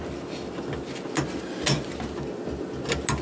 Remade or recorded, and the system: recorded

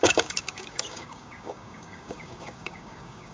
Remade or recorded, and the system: remade, codec, DAC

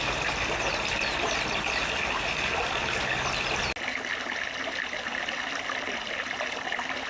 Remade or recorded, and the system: recorded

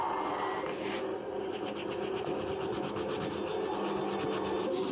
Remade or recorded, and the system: recorded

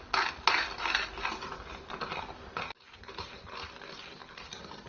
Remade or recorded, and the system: recorded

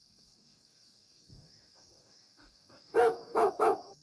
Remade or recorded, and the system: remade, codec, DAC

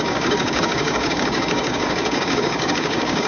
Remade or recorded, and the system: remade, codec, DAC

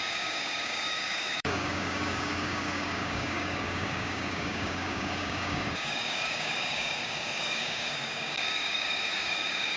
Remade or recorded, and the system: remade, codec, DAC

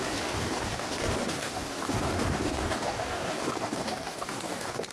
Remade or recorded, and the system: remade, codec, DAC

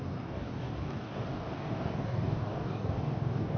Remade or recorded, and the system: remade, codec, DAC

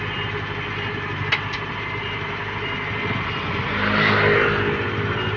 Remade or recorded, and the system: recorded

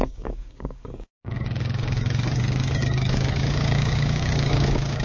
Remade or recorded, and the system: remade, codec, DAC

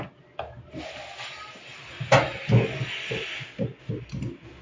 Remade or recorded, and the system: recorded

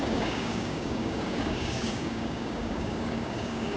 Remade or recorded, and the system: remade, codec, DAC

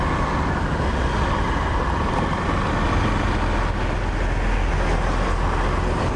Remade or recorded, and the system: recorded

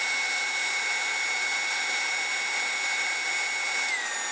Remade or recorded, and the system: recorded